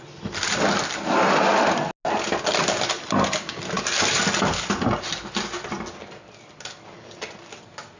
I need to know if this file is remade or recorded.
recorded